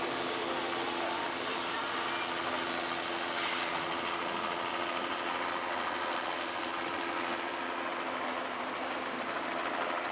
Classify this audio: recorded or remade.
recorded